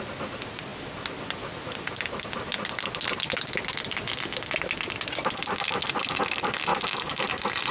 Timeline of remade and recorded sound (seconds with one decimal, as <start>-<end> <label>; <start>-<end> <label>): 0.0-7.7 recorded